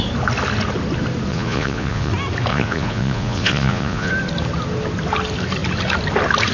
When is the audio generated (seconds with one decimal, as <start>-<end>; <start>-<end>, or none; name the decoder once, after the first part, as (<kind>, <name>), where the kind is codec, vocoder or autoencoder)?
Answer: 1.3-2.1 (vocoder, Vocos); 2.5-4.1